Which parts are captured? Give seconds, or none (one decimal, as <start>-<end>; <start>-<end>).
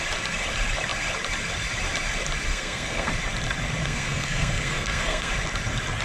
0.0-2.5; 3.1-3.8; 5.3-6.0